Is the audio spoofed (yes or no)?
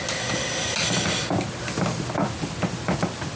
no